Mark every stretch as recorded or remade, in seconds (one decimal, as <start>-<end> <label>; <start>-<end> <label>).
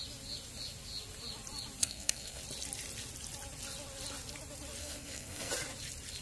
0.0-1.8 recorded; 1.8-2.4 remade; 2.4-4.8 recorded; 4.8-5.5 remade; 5.5-6.2 recorded